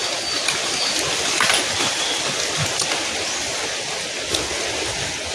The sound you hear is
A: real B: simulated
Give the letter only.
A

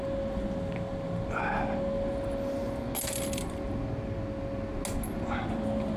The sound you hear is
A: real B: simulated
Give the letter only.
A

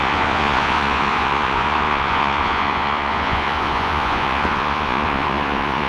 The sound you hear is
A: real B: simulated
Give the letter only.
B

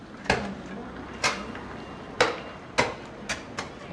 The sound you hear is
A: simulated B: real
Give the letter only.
B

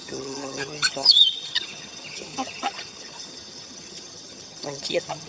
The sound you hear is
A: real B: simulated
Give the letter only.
B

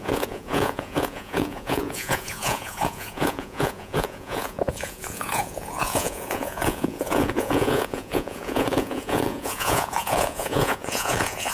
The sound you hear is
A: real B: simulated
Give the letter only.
B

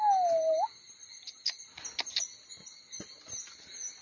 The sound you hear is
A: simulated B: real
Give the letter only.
B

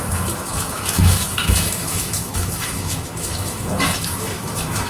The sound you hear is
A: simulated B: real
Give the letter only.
A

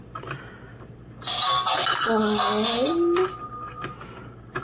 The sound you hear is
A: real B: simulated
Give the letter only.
A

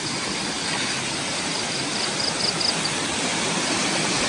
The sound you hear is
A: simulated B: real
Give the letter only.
B